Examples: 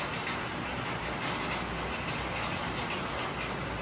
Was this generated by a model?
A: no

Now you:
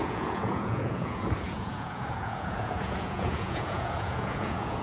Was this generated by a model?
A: yes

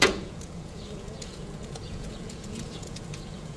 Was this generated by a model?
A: yes